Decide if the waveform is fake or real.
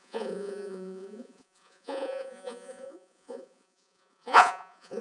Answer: fake